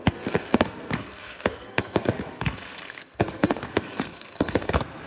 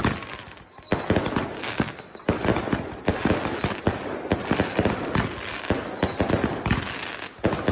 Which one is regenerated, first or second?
first